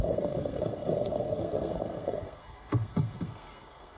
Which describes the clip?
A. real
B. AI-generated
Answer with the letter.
B